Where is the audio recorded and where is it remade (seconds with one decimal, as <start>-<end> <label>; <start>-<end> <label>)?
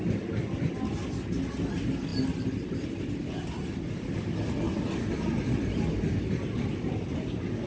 0.0-7.7 recorded